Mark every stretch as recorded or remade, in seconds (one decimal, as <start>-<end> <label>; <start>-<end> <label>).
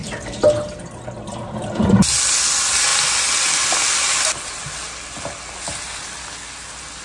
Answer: 0.0-7.0 recorded